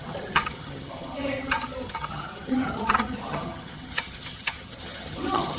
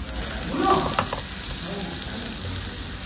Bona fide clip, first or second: second